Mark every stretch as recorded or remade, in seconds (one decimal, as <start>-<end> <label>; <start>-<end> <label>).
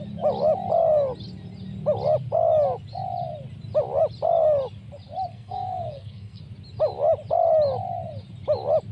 0.0-5.3 recorded; 5.3-6.4 remade; 6.4-8.9 recorded